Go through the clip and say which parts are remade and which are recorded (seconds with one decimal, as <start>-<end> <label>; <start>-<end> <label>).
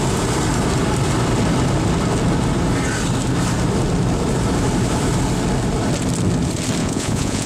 0.0-6.8 recorded; 6.8-7.5 remade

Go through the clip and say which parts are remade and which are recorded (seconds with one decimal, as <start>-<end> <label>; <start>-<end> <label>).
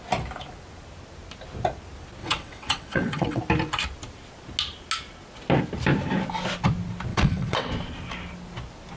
0.0-2.2 recorded; 2.2-3.4 remade; 3.4-7.1 recorded; 7.1-7.7 remade; 7.7-9.0 recorded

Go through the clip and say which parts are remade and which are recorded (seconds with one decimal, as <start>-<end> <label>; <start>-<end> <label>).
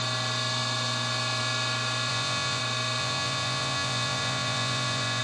0.0-2.1 recorded; 2.1-2.6 remade; 2.6-3.0 recorded; 3.0-5.2 remade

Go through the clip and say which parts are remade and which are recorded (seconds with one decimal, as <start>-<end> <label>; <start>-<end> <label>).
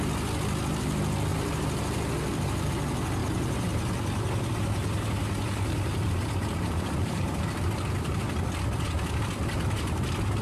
0.0-1.3 recorded; 1.3-2.7 remade; 2.7-3.2 recorded; 3.2-7.3 remade; 7.3-10.4 recorded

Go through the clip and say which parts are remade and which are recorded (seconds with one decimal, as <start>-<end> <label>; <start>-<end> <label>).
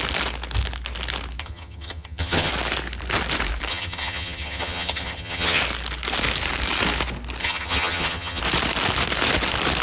0.0-1.4 recorded; 1.4-2.5 remade; 2.5-3.7 recorded; 3.7-5.6 remade; 5.6-7.4 recorded; 7.4-8.4 remade; 8.4-9.8 recorded